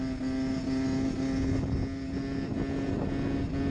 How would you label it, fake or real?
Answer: real